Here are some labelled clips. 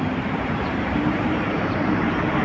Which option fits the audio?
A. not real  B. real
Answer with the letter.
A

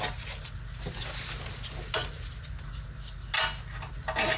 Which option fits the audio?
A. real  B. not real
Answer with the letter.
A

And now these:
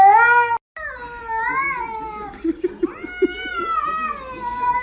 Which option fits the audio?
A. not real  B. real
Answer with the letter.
B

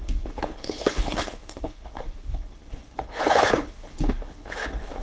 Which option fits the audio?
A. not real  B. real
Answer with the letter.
A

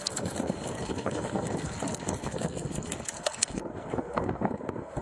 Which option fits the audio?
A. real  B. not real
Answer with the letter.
B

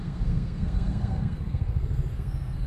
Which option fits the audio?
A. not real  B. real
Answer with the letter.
A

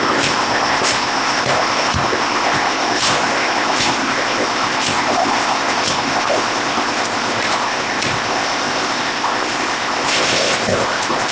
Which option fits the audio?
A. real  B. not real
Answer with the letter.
B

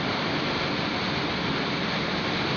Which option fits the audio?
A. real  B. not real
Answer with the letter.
A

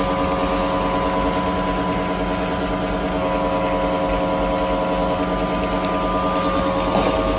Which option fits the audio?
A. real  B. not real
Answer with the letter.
A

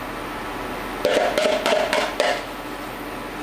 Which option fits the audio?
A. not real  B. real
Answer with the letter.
B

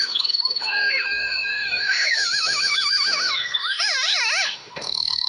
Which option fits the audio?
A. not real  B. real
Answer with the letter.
A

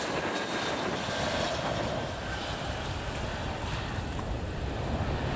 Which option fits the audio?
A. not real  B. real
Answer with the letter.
B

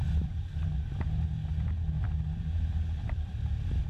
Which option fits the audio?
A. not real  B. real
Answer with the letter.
B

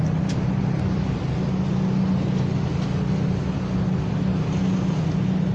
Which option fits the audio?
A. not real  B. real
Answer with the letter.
B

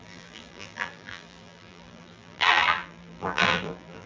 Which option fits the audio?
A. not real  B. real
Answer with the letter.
A